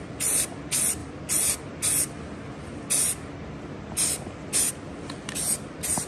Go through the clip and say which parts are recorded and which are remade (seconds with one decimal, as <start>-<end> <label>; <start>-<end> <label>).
0.0-6.1 recorded